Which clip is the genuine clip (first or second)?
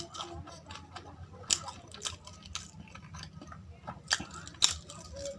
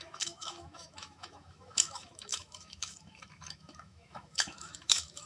first